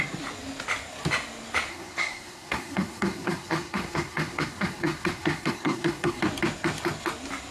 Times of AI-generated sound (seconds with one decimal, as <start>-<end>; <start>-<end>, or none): 1.7-6.2